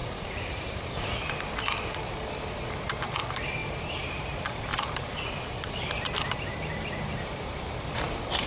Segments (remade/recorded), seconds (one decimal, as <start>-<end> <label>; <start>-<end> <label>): 0.0-1.2 remade; 1.2-3.6 recorded; 3.6-7.7 remade; 7.7-8.5 recorded